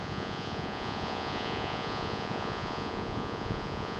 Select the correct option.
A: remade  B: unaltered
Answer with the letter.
A